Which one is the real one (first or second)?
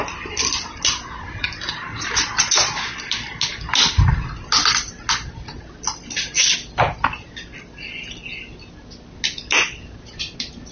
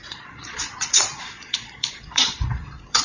first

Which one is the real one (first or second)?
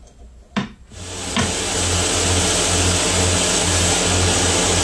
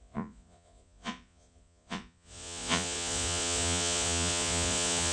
first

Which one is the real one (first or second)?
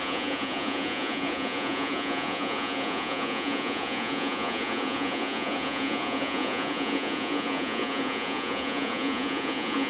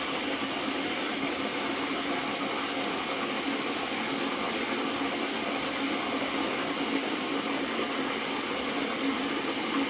second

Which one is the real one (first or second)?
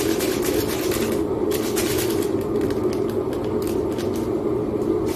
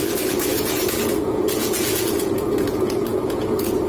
first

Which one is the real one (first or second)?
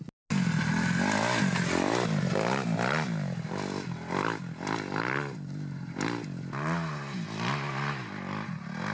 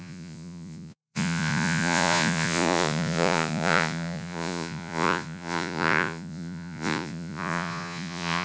first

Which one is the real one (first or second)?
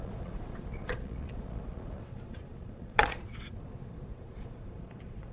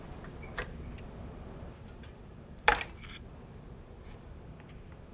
second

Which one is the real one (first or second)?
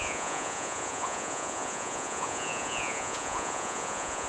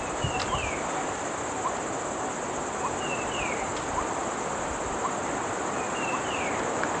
second